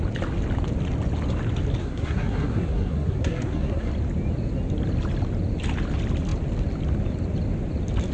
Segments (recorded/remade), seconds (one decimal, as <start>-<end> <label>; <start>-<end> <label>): 0.0-1.8 recorded; 1.8-3.9 remade; 3.9-8.1 recorded